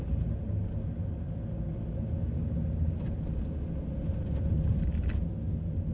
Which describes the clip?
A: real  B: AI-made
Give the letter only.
A